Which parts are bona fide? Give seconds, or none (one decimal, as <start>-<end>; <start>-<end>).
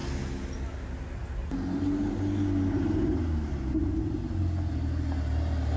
0.0-5.8